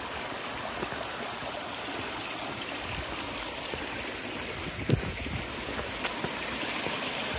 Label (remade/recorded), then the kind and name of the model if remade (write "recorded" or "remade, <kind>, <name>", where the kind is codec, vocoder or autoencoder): recorded